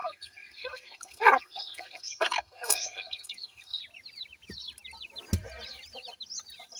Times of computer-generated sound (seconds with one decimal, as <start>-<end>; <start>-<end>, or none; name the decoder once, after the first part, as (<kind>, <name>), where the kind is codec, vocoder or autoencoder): 0.0-3.8 (codec, SNAC)